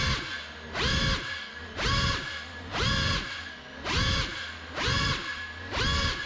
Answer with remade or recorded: recorded